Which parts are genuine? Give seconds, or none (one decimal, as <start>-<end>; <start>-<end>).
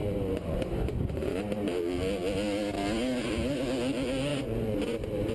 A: 1.4-4.3